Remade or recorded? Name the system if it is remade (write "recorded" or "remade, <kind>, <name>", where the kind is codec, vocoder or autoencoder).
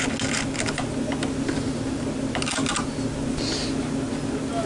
recorded